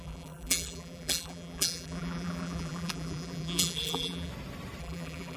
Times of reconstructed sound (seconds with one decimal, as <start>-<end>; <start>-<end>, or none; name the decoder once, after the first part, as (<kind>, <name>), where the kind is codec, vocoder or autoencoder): 0.0-4.3 (vocoder, BigVGAN v2); 4.8-5.4